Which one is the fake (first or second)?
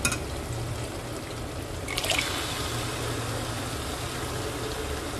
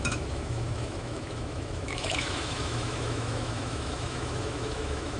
second